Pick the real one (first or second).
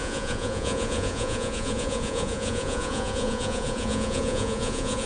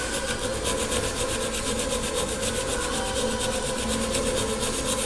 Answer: second